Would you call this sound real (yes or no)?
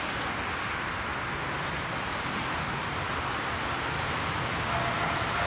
yes